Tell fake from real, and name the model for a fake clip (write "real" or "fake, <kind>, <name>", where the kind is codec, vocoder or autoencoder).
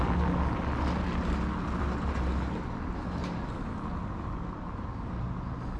real